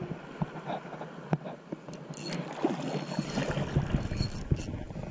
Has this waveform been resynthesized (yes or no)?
no